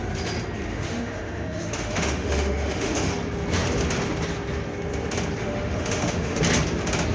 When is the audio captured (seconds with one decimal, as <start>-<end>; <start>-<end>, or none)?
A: 0.0-0.7; 3.1-5.4; 6.4-7.1